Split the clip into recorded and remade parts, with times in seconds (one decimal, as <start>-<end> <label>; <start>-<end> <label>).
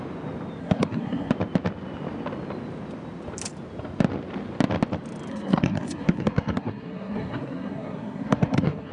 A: 0.0-0.6 recorded; 0.6-1.3 remade; 1.3-5.3 recorded; 5.3-8.9 remade